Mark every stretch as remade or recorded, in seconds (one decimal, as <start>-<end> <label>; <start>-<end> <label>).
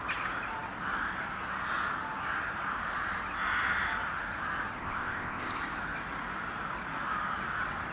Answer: 0.0-4.8 recorded; 4.8-5.6 remade; 5.6-7.9 recorded